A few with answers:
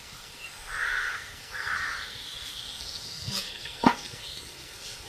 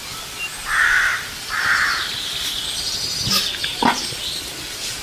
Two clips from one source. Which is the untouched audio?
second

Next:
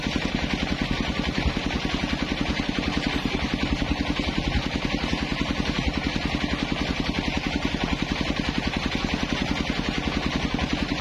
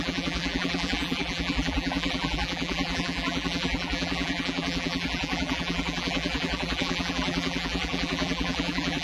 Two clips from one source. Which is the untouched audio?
first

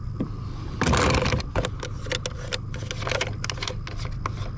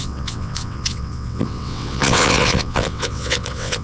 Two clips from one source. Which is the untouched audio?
first